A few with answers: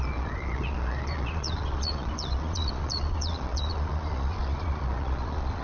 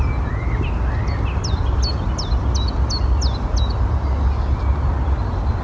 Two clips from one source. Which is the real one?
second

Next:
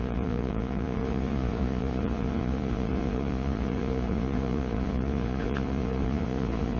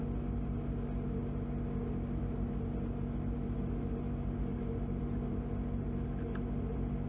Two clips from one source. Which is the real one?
second